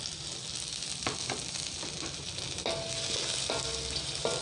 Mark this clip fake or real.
real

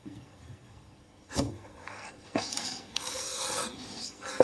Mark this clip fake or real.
fake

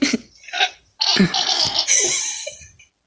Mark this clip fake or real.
real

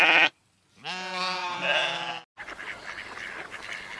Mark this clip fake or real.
real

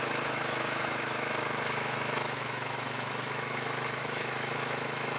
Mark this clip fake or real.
fake